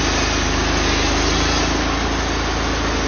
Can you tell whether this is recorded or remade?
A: recorded